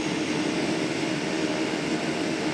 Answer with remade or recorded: recorded